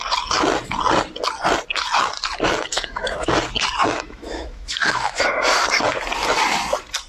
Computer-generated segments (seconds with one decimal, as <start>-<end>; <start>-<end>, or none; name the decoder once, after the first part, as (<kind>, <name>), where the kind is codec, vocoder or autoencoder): 2.7-3.3 (autoencoder, DAC-VAE); 3.8-5.2